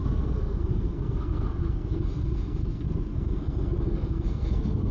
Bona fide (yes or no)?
no